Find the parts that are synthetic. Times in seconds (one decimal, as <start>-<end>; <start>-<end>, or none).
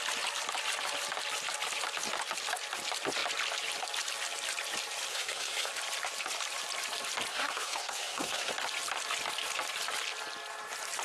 5.1-5.7; 7.3-8.5